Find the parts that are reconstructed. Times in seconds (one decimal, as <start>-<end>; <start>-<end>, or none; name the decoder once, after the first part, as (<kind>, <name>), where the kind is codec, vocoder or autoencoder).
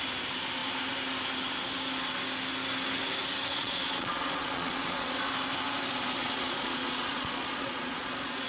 3.5-5.2 (vocoder, Vocos); 6.2-8.5